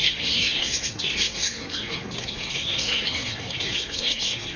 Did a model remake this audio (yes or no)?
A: yes